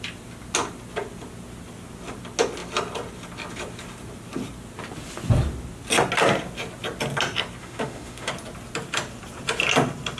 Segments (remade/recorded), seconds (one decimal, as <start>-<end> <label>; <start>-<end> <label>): 0.0-7.6 recorded; 7.6-8.3 remade; 8.3-10.2 recorded